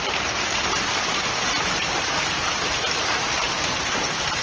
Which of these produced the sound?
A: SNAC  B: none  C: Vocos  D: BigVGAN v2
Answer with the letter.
D